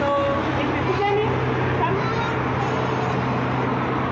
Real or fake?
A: real